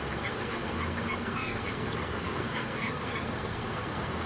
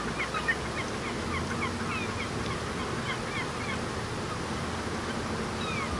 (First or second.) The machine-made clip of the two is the first